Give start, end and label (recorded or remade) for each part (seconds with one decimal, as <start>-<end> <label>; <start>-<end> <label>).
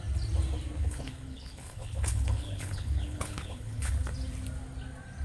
0.0-0.8 recorded; 0.8-3.9 remade; 3.9-5.2 recorded